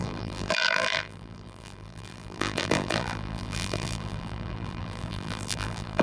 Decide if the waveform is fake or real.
fake